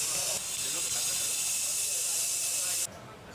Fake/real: real